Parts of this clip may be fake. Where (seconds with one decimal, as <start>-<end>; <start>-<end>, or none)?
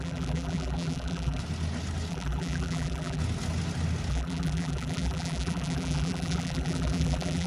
0.0-1.4; 2.1-3.2; 4.1-7.5